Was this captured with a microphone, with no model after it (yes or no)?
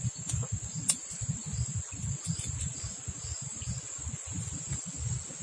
yes